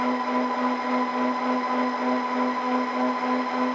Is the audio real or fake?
real